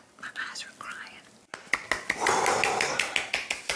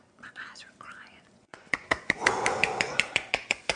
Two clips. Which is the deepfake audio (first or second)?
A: second